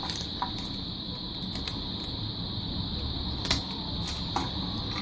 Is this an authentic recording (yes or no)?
yes